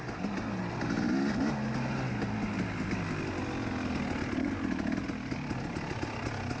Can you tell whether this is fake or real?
real